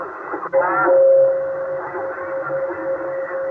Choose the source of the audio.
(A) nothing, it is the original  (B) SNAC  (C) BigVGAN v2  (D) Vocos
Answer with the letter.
A